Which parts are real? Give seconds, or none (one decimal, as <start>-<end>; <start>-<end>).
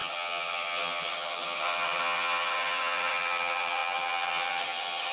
none